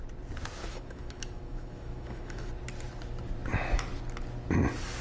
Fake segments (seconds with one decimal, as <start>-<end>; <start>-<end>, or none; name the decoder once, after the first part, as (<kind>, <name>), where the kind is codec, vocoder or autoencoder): 0.6-2.5 (autoencoder, DAC-VAE)